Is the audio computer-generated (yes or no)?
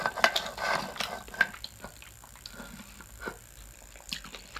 no